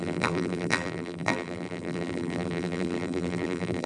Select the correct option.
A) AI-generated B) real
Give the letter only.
A